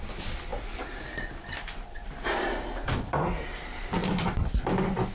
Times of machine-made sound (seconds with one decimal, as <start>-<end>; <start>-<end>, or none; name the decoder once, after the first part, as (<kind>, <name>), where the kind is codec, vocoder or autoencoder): 0.0-0.5 (vocoder, BigVGAN v2); 3.5-5.1

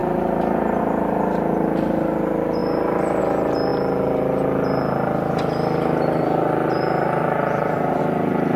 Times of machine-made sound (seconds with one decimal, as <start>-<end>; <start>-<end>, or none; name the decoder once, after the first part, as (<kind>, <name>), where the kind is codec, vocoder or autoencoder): none